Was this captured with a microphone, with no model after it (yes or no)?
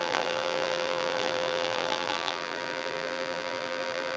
no